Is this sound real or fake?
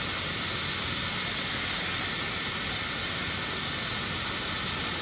real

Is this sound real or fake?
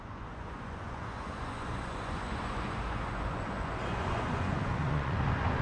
fake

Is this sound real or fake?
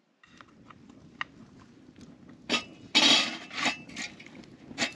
real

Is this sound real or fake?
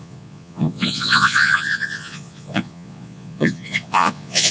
fake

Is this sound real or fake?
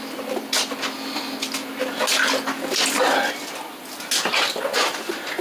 real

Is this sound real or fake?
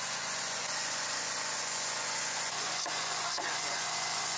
fake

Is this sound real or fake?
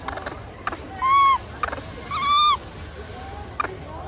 real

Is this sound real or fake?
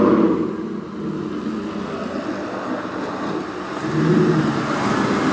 real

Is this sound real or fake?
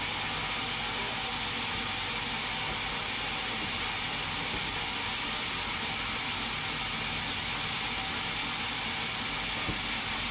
real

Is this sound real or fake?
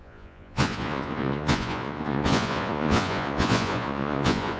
fake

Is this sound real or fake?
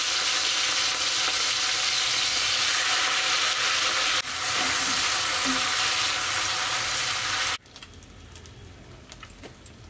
real